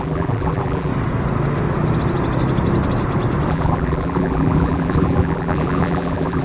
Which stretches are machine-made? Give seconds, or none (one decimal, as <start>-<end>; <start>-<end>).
0.0-0.9; 3.5-6.4